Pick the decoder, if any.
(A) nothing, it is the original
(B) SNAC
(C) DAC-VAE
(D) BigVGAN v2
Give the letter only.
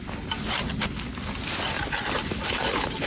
A